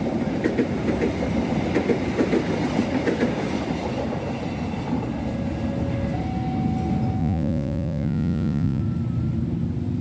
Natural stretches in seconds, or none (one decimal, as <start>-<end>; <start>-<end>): 0.0-7.2; 8.8-10.0